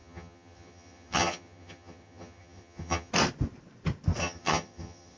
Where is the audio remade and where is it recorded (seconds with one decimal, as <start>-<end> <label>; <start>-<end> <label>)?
0.0-3.1 remade; 3.1-4.2 recorded; 4.2-5.2 remade